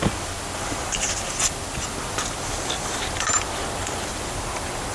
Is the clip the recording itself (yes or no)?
yes